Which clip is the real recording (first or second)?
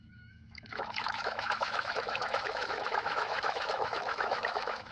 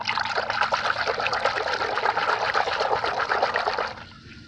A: second